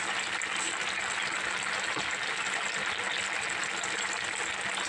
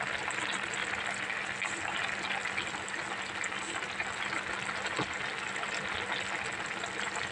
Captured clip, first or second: second